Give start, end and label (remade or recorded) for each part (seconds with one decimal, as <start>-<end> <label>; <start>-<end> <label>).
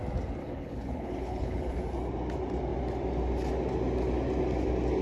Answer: 0.0-0.4 recorded; 0.4-1.8 remade; 1.8-5.0 recorded